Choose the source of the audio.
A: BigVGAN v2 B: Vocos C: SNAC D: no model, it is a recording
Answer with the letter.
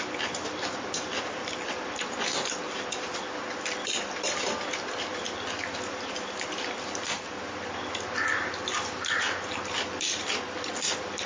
D